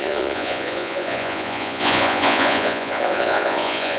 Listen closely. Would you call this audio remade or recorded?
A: remade